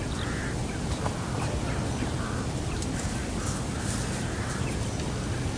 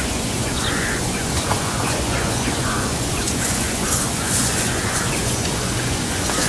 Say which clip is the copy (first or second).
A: second